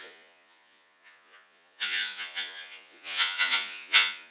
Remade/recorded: remade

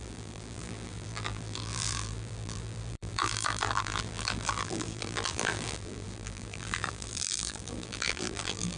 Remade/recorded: remade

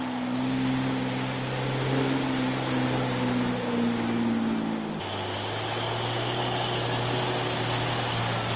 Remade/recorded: recorded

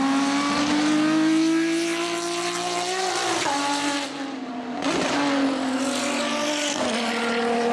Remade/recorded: recorded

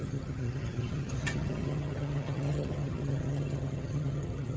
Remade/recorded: remade